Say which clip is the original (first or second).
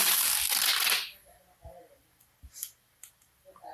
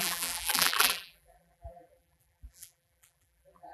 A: first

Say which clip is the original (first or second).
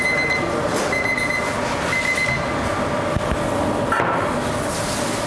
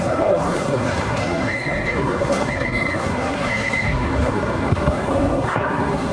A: first